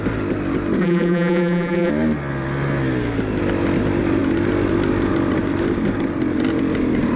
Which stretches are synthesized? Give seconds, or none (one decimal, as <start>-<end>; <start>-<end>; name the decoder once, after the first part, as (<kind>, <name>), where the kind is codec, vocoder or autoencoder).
0.8-1.9 (vocoder, BigVGAN v2)